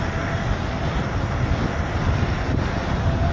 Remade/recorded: recorded